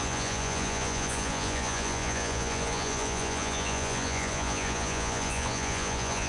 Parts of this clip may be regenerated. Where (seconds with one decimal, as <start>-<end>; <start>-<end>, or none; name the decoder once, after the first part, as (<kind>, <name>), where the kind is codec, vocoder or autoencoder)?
0.0-6.3 (vocoder, Vocos)